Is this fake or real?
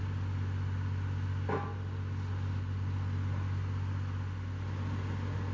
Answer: real